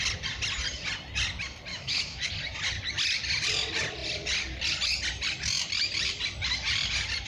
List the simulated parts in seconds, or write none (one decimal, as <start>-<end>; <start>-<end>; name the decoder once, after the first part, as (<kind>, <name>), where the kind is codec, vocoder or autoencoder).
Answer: 1.7-2.3 (autoencoder, DAC-VAE)